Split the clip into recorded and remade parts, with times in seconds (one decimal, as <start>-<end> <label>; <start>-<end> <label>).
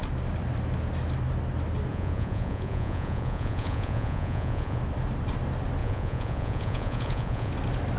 0.0-1.9 recorded; 1.9-4.8 remade; 4.8-5.8 recorded; 5.8-7.5 remade; 7.5-8.0 recorded